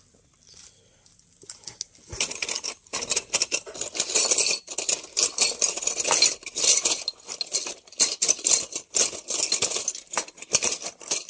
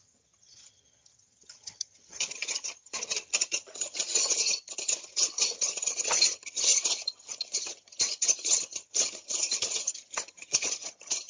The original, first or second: first